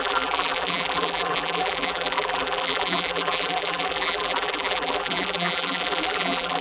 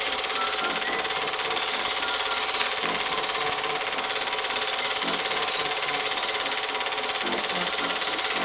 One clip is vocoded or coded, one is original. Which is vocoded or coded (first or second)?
first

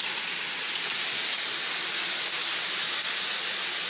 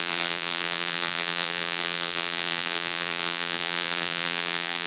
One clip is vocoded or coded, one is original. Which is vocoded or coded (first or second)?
second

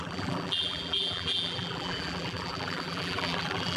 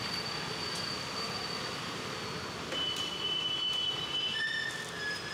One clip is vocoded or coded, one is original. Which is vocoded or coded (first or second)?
first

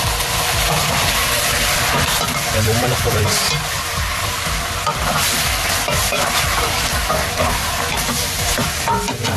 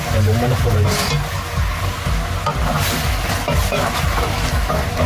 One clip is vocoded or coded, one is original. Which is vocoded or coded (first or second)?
first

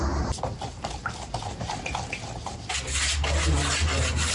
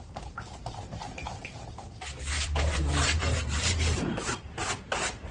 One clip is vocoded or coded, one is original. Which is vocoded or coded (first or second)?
second